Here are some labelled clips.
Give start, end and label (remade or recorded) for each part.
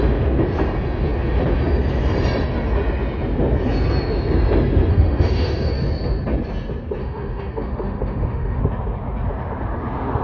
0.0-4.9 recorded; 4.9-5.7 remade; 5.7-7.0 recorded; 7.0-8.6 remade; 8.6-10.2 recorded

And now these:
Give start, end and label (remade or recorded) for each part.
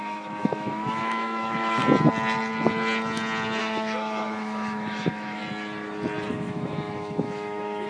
0.0-1.8 remade; 1.8-3.6 recorded; 3.6-5.4 remade; 5.4-6.3 recorded; 6.3-7.9 remade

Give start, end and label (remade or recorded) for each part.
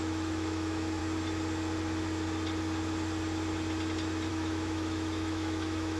0.0-1.0 remade; 1.0-4.3 recorded; 4.3-6.0 remade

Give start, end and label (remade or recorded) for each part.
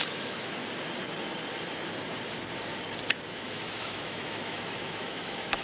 0.0-0.6 remade; 0.6-3.3 recorded; 3.3-5.6 remade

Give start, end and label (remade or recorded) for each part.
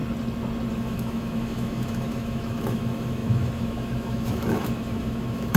0.0-0.7 recorded; 0.7-5.6 remade